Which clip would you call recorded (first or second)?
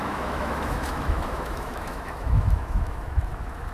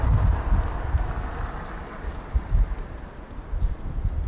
second